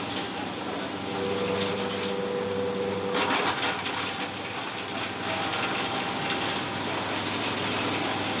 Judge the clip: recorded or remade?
recorded